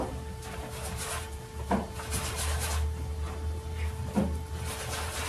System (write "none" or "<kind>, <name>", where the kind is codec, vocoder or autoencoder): none